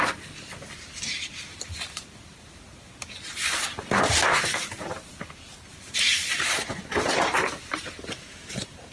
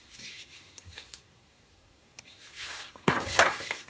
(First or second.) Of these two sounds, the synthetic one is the second